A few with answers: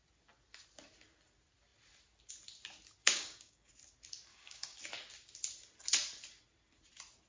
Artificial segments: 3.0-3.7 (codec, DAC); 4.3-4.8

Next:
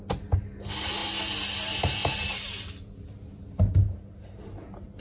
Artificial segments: none

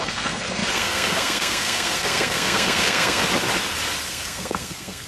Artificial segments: 0.0-3.2 (codec, SNAC); 4.1-5.1

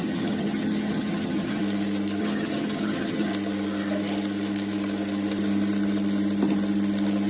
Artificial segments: 0.0-1.6 (vocoder, HiFi-GAN); 2.2-3.3

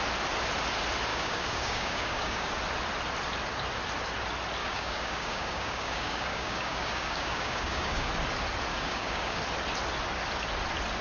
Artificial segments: 1.1-2.5 (codec, DAC); 4.6-8.1; 8.7-9.4

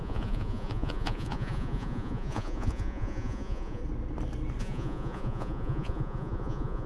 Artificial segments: 0.0-3.8 (vocoder, Vocos); 4.6-6.9

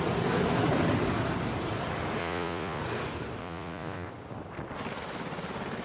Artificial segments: 2.2-2.8 (vocoder, Vocos); 3.4-4.1

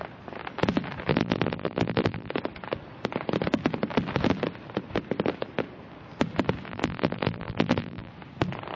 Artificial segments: 1.1-2.3 (vocoder, BigVGAN v2); 6.7-8.1